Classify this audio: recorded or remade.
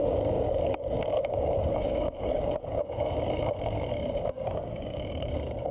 remade